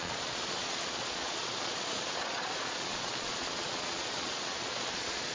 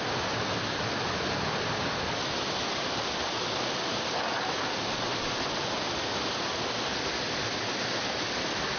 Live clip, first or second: second